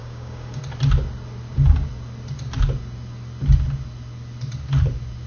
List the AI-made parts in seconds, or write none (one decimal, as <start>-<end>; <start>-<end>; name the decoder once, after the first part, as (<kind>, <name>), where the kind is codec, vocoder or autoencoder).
0.0-0.6 (codec, DAC)